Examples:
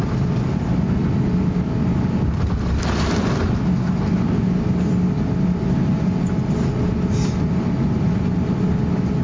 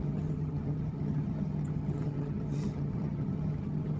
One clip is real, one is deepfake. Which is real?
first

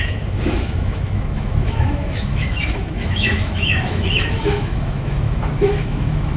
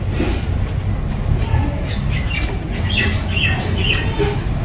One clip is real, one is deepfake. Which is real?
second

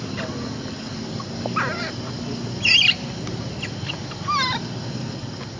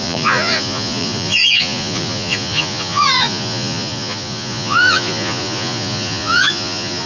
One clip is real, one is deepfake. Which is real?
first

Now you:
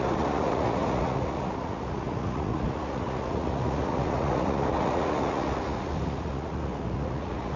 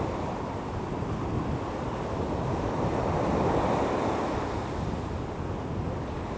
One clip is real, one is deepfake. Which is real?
second